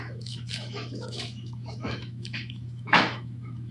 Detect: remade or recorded remade